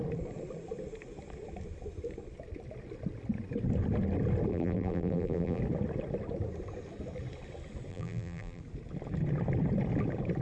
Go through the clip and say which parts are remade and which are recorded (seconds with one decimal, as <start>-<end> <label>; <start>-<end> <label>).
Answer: 0.0-4.5 recorded; 4.5-5.6 remade; 5.6-7.9 recorded; 7.9-8.6 remade; 8.6-10.4 recorded